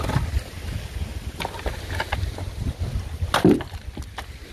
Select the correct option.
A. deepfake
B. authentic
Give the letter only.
B